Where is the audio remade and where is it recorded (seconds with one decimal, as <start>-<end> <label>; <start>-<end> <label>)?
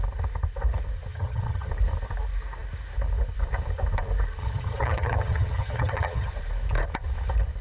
0.0-1.1 recorded; 1.1-1.7 remade; 1.7-4.4 recorded; 4.4-6.3 remade; 6.3-7.6 recorded